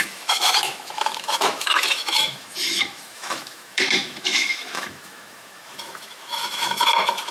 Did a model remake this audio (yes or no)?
yes